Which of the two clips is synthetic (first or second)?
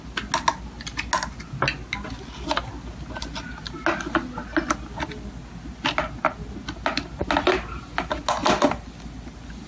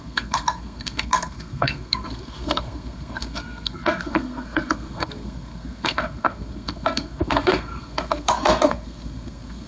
second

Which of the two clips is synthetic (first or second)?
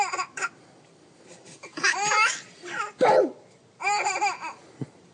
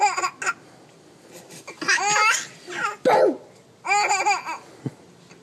first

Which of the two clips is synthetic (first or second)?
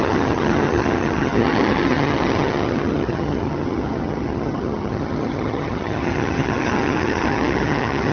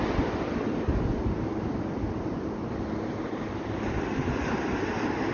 first